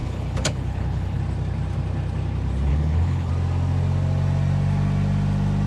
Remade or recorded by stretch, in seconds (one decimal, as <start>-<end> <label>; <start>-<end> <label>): 0.0-1.2 remade; 1.2-2.7 recorded; 2.7-3.3 remade; 3.3-5.7 recorded